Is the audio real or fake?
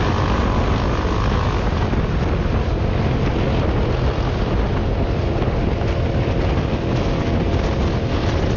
real